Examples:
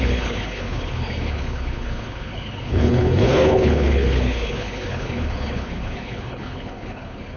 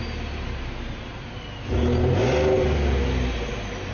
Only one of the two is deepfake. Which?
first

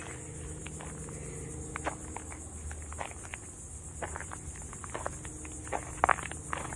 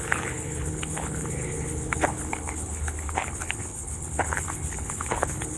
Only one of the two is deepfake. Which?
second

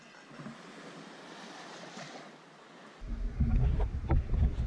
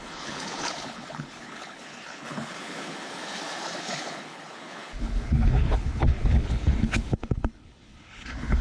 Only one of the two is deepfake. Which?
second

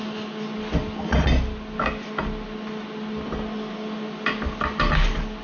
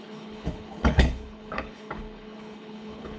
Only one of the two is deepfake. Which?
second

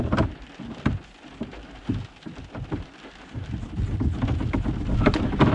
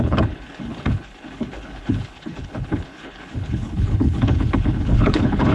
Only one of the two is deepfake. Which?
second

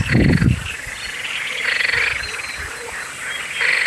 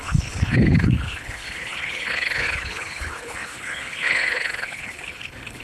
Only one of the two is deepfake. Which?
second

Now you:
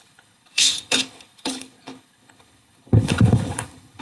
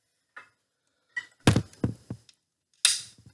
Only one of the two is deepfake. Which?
first